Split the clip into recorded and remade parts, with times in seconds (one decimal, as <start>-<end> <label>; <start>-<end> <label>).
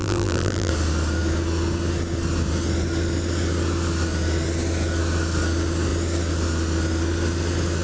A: 0.0-0.7 remade; 0.7-7.8 recorded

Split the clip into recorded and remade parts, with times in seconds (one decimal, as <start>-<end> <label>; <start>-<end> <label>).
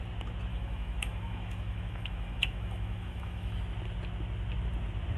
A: 0.0-0.5 recorded; 0.5-3.6 remade; 3.6-5.2 recorded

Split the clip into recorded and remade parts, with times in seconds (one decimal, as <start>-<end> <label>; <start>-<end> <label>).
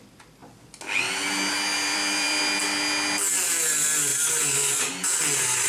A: 0.0-1.7 recorded; 1.7-2.4 remade; 2.4-4.1 recorded; 4.1-5.2 remade; 5.2-5.7 recorded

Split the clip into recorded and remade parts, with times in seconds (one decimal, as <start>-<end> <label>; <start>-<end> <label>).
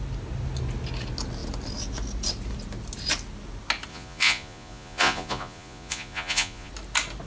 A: 0.0-3.9 recorded; 3.9-6.7 remade; 6.7-7.3 recorded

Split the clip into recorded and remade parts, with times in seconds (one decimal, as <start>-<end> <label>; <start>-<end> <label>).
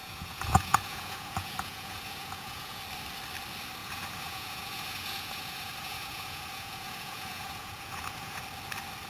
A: 0.0-2.8 remade; 2.8-3.8 recorded; 3.8-8.4 remade; 8.4-9.1 recorded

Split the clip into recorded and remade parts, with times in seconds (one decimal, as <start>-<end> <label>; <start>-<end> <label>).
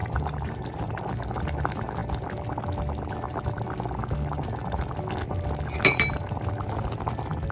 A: 0.0-1.0 remade; 1.0-7.5 recorded